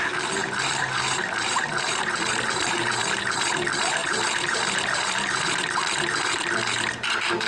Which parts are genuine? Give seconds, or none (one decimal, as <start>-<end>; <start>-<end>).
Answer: 0.0-0.4; 3.0-4.0